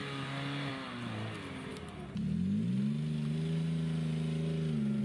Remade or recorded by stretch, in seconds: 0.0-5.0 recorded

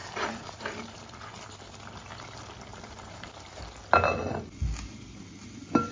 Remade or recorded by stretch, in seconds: 0.0-1.3 remade; 1.3-2.7 recorded; 2.7-3.6 remade; 3.6-5.9 recorded

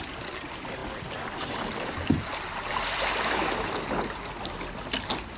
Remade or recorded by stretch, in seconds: 0.0-5.4 recorded

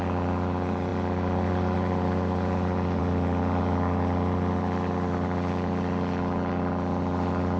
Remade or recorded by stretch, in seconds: 0.0-7.6 recorded

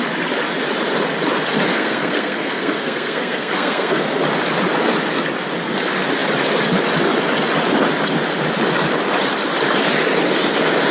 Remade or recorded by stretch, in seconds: 0.0-1.7 recorded; 1.7-4.0 remade; 4.0-10.9 recorded

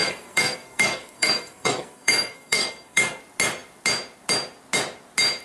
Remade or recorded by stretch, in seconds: 0.0-3.2 remade; 3.2-5.4 recorded

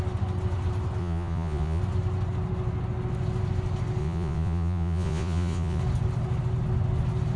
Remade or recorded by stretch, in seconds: 0.0-1.0 recorded; 1.0-1.8 remade; 1.8-4.0 recorded; 4.0-5.8 remade; 5.8-7.4 recorded

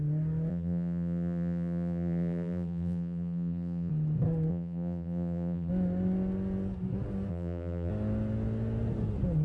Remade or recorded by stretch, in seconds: 0.0-0.5 recorded; 0.5-3.9 remade; 3.9-4.5 recorded; 4.5-5.7 remade; 5.7-7.3 recorded; 7.3-7.9 remade; 7.9-9.4 recorded